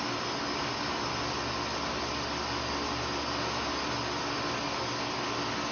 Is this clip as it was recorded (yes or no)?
yes